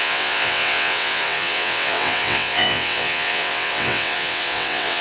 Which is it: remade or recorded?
remade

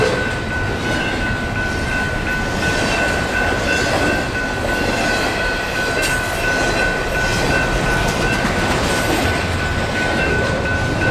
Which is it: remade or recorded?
recorded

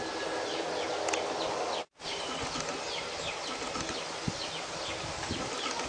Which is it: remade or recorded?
recorded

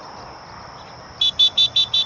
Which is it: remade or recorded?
recorded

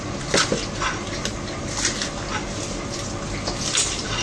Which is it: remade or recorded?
recorded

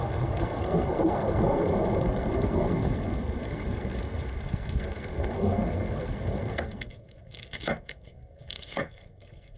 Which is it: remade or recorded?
remade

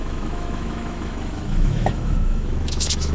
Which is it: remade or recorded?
remade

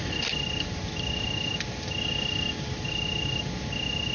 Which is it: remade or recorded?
recorded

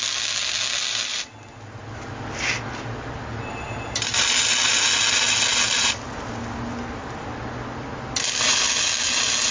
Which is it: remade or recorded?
recorded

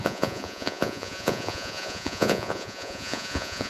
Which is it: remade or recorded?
remade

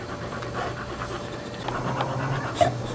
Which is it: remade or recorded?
recorded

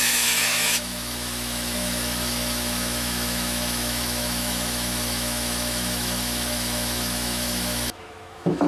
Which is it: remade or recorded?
remade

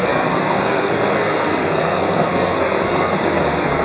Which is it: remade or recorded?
remade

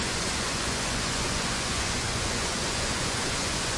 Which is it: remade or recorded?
remade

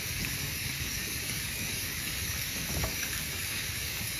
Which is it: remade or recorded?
remade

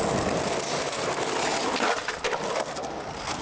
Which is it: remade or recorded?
recorded